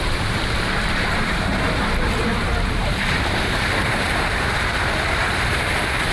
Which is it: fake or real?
fake